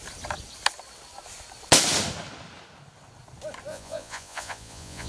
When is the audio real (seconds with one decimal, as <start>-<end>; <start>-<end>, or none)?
0.0-3.7